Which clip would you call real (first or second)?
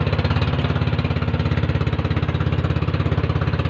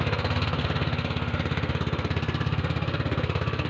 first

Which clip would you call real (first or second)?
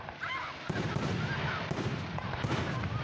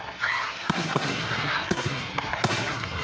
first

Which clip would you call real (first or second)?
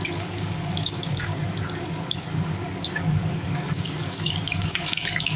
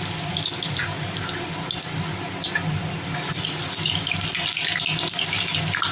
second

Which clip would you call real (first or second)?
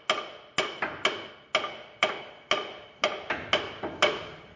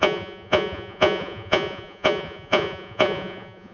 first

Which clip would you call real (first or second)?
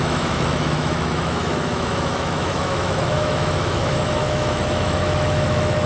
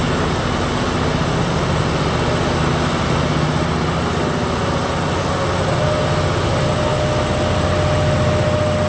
second